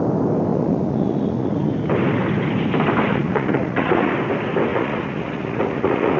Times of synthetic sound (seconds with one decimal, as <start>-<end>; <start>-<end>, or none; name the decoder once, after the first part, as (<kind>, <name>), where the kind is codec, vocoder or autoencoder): 0.5-1.7 (vocoder, Vocos); 3.1-4.1; 4.7-6.2